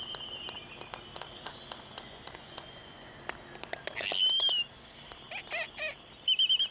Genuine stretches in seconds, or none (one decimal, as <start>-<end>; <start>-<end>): 0.0-1.1; 3.2-6.7